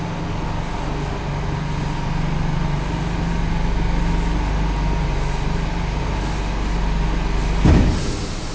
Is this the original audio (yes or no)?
yes